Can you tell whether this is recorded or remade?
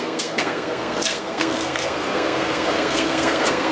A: remade